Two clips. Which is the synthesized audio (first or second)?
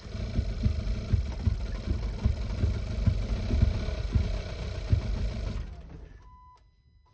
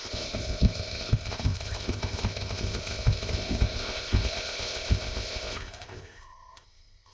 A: second